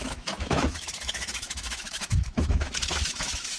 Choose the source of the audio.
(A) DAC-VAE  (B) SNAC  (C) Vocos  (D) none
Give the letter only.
A